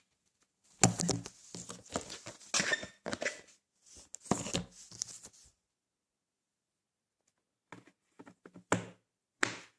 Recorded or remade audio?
recorded